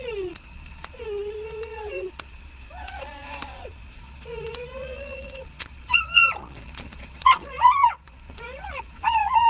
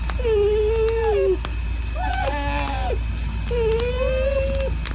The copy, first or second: first